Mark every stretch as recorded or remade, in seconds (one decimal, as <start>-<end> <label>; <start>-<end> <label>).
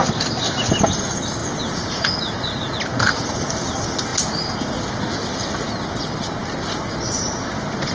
0.0-7.9 recorded